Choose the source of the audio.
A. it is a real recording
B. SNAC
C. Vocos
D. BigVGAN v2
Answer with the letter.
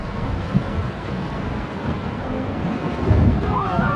B